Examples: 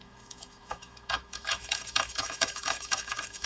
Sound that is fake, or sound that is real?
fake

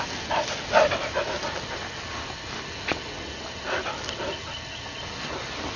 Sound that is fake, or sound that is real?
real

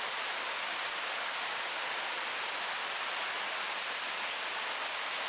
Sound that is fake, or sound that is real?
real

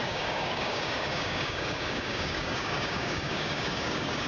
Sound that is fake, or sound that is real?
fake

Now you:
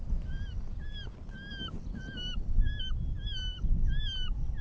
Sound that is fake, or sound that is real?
real